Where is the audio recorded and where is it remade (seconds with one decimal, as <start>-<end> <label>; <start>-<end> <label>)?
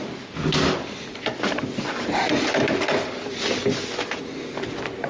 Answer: 0.0-5.1 recorded